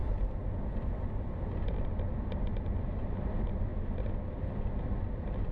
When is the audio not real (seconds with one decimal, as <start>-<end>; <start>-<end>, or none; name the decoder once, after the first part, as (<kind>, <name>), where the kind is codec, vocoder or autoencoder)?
none